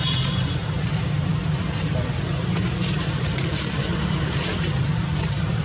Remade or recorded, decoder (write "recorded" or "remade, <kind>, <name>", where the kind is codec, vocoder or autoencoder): remade, vocoder, BigVGAN v2